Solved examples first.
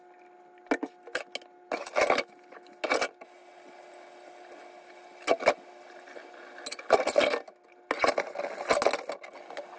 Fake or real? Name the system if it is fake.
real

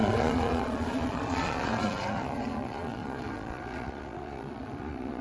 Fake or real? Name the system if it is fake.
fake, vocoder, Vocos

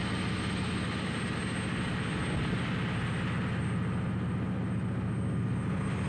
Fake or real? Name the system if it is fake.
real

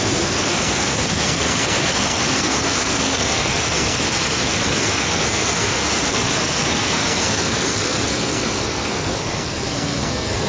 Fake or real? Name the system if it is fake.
fake, codec, SNAC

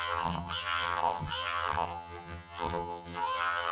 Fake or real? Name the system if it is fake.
fake, vocoder, HiFi-GAN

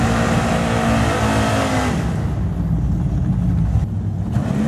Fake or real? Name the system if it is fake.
real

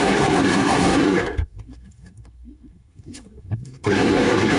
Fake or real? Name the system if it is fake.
fake, codec, SNAC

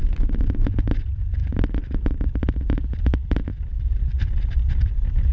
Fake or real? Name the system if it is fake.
real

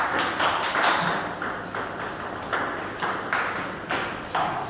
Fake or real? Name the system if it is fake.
real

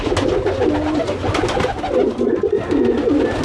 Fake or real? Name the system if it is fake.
real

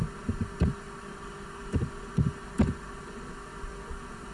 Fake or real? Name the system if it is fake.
real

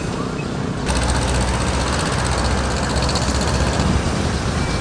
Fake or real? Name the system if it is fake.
real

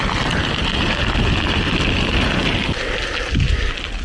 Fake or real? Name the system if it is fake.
real